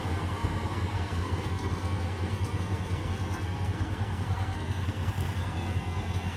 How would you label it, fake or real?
fake